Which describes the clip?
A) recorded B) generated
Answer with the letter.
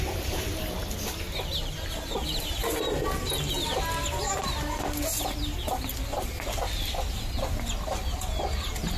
A